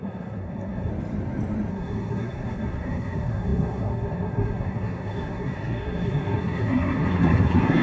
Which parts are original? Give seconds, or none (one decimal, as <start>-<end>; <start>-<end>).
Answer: 0.9-1.7